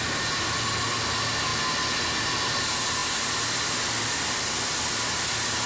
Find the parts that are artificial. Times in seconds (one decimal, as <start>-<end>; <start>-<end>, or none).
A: none